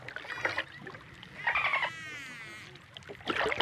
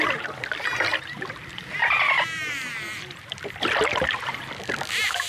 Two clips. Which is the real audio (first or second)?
first